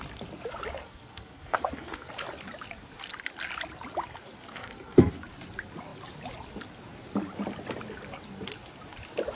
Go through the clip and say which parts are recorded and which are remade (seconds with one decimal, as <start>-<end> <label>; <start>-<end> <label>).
0.0-0.8 recorded; 0.8-2.1 remade; 2.1-4.5 recorded; 4.5-5.1 remade; 5.1-9.4 recorded